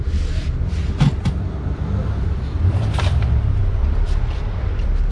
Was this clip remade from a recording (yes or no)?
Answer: yes